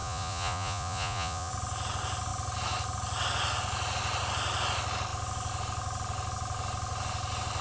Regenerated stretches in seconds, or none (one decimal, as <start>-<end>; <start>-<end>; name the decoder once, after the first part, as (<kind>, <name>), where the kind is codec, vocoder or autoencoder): 0.0-1.5 (vocoder, Vocos)